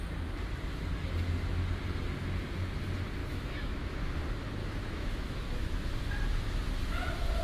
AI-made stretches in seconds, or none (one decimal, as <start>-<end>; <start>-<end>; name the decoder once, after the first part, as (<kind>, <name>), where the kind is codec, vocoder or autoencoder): 3.2-4.1 (autoencoder, DAC-VAE); 4.6-6.1